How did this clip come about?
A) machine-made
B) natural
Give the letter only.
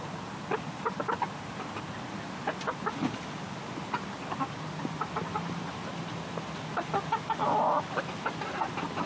B